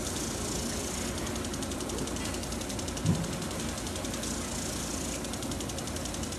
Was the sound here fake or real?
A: real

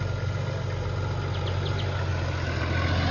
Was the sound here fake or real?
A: real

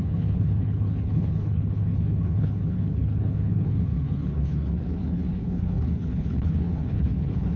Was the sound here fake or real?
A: fake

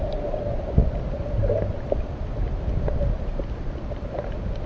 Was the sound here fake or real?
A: real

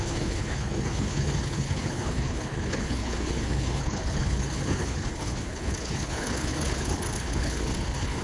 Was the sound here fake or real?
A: fake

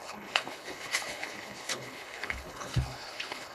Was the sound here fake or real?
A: fake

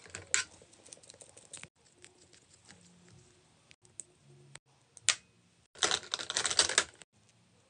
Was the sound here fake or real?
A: real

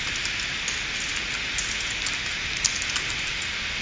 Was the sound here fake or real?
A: real